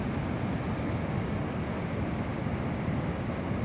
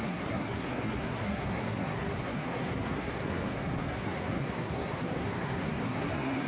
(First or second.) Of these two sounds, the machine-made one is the second